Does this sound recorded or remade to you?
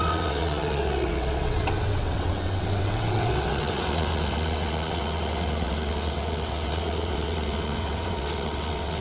remade